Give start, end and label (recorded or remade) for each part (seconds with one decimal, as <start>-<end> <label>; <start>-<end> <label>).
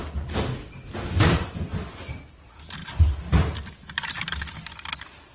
0.0-2.8 recorded; 2.8-4.5 remade; 4.5-5.3 recorded